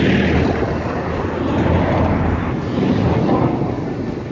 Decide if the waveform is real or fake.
real